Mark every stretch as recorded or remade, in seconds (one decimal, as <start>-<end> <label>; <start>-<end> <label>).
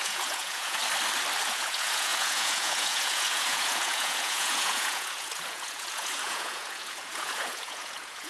0.0-0.8 remade; 0.8-1.4 recorded; 1.4-8.3 remade